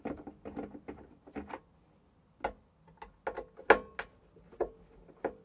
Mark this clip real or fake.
real